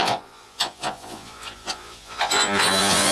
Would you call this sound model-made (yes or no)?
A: yes